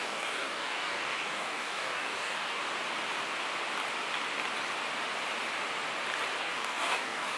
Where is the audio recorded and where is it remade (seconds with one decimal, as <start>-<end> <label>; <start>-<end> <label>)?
0.0-2.6 remade; 2.6-6.4 recorded; 6.4-7.4 remade